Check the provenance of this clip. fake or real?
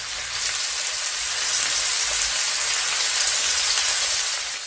real